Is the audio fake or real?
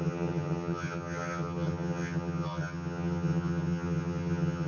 fake